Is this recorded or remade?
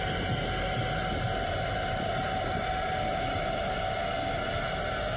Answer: recorded